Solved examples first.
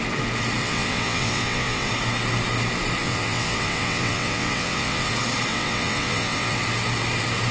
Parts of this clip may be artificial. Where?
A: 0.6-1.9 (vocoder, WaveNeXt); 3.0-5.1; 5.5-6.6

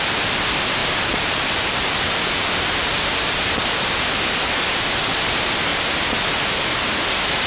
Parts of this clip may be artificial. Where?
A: 0.8-3.0 (vocoder, BigVGAN v2); 5.7-6.7